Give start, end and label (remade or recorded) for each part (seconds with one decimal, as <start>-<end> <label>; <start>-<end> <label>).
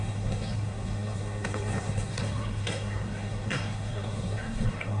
0.0-5.0 remade